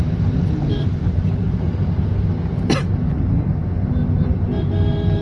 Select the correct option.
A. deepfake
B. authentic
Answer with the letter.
B